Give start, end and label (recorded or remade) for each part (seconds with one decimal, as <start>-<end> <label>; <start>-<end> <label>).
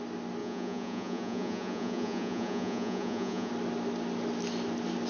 0.0-0.4 recorded; 0.4-3.5 remade; 3.5-5.1 recorded